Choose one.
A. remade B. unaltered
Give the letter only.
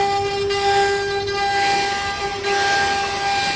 B